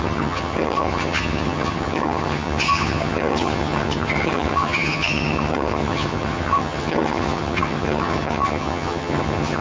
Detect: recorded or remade remade